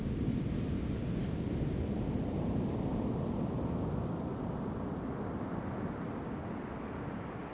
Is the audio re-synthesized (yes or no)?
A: no